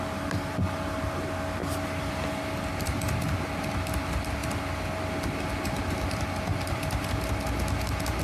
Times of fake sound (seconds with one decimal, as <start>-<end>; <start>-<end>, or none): 4.4-5.0; 6.5-7.5